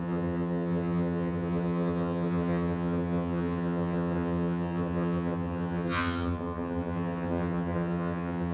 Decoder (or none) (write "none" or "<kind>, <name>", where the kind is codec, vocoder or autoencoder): vocoder, HiFi-GAN